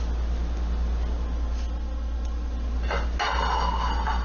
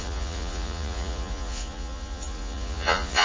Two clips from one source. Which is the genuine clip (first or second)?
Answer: first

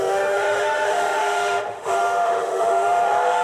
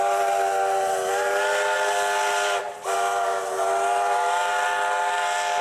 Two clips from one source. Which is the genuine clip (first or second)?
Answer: second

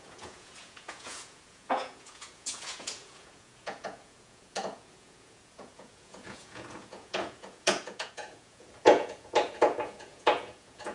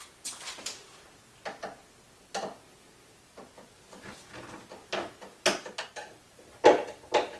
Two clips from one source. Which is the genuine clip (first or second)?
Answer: second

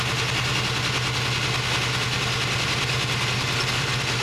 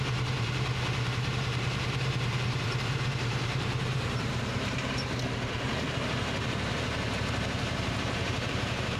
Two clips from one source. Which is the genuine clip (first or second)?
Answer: first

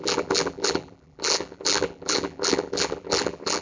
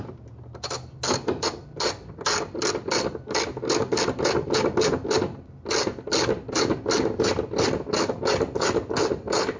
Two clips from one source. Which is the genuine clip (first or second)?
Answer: second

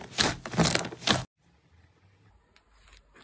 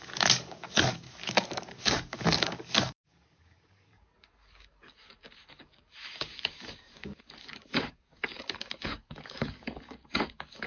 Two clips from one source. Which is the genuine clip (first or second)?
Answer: first